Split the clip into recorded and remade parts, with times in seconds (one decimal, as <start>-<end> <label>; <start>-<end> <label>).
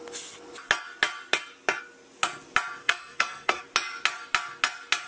0.0-2.8 recorded; 2.8-3.6 remade; 3.6-5.1 recorded